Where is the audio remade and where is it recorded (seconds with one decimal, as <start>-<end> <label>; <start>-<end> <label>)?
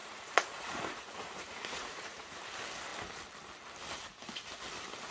0.0-2.4 remade; 2.4-5.1 recorded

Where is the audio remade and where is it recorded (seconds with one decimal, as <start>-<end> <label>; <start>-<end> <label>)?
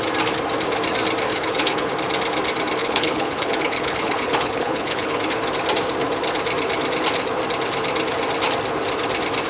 0.0-1.3 recorded; 1.3-1.9 remade; 1.9-2.8 recorded; 2.8-5.2 remade; 5.2-9.5 recorded